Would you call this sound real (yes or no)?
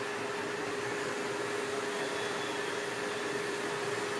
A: yes